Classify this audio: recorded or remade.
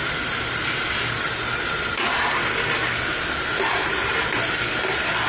recorded